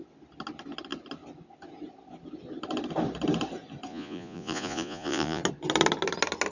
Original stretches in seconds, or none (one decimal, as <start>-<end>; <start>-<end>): 0.0-3.9; 5.4-6.5